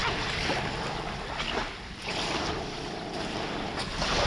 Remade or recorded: recorded